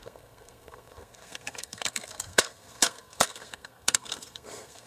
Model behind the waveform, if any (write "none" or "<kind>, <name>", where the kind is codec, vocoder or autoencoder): codec, SNAC